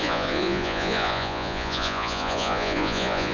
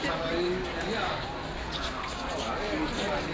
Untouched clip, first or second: second